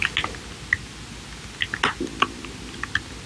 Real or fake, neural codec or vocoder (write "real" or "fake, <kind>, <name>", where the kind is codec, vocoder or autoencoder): real